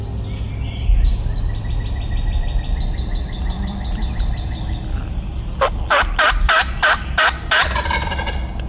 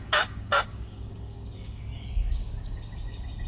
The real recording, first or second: first